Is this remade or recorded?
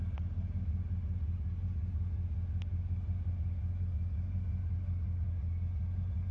recorded